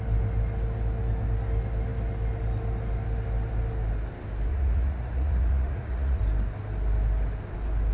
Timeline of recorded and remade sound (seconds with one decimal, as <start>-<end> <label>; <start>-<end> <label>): 0.0-4.5 recorded; 4.5-6.2 remade; 6.2-7.9 recorded